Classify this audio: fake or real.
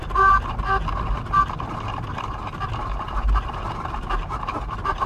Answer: real